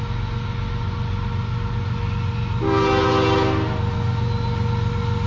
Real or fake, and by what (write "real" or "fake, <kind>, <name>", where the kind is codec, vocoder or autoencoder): real